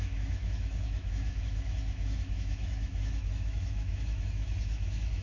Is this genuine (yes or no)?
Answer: no